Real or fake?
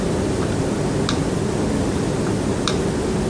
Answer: real